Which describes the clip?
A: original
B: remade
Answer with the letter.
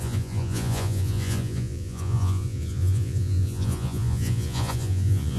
B